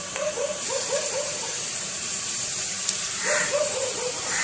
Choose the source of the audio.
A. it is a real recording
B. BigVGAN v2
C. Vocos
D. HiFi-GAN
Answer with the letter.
B